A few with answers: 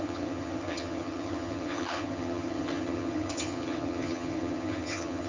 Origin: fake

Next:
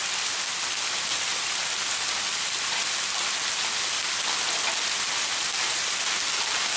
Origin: real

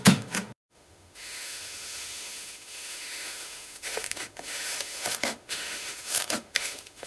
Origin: fake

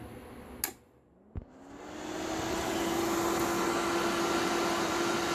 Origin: real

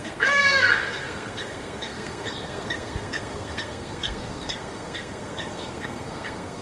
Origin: fake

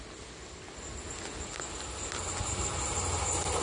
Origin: real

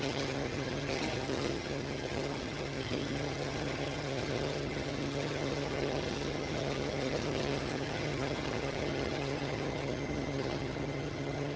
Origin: fake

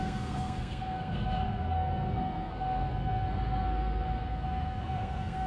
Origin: fake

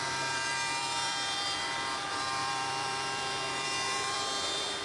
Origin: fake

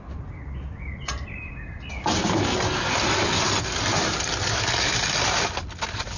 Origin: real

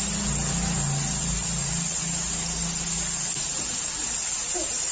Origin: real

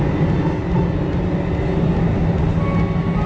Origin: real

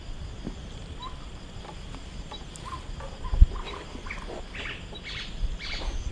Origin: real